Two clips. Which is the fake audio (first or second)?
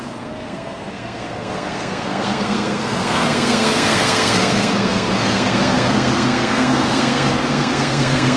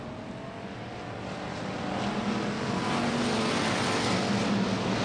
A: first